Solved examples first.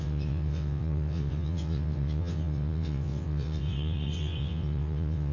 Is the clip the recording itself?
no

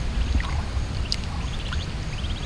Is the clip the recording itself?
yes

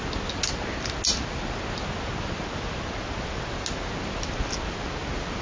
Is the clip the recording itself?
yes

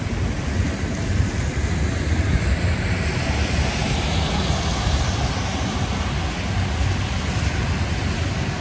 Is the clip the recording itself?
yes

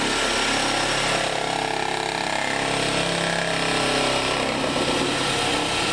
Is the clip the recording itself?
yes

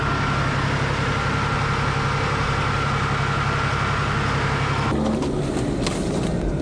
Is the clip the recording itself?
yes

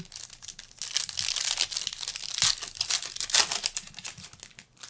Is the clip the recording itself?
yes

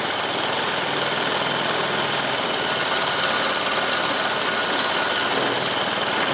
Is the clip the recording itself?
yes